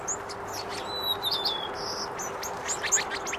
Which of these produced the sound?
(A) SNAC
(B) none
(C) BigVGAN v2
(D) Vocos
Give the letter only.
B